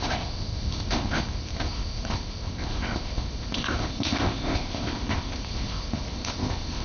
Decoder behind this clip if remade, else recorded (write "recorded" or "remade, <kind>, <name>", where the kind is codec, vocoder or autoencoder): remade, codec, ZipCodec